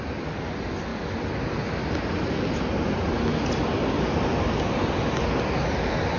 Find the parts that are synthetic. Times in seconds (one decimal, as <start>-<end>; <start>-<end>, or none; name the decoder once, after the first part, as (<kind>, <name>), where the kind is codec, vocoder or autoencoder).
none